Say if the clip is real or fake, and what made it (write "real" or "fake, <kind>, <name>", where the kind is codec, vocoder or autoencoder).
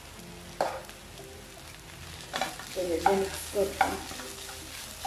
real